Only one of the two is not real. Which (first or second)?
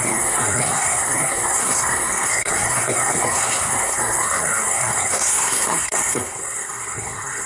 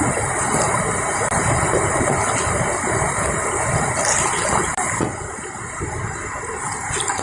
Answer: first